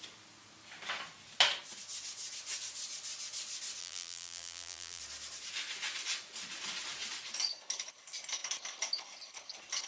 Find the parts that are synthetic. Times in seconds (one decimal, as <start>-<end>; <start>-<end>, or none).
3.8-5.0